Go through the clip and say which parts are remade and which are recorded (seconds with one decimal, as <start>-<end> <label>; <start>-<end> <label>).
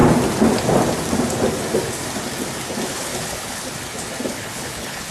0.0-2.9 recorded; 2.9-3.6 remade; 3.6-4.3 recorded; 4.3-5.1 remade